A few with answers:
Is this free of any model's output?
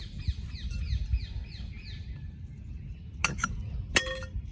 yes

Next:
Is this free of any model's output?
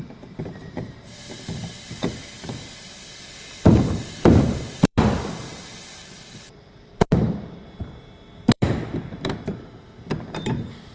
no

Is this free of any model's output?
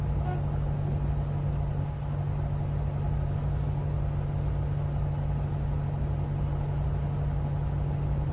yes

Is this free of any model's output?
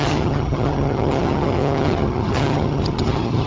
no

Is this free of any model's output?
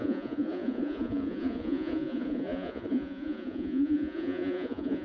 no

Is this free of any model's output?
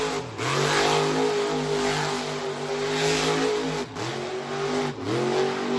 yes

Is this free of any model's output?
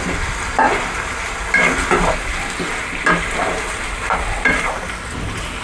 yes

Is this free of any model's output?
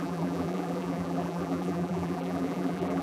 no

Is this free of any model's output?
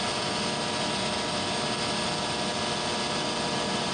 yes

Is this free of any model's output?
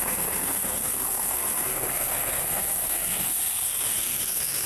no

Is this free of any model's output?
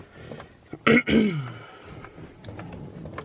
yes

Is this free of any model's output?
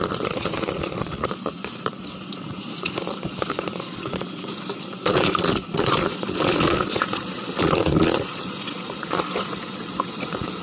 no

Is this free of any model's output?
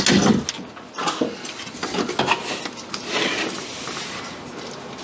yes